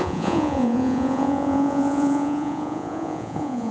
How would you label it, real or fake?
fake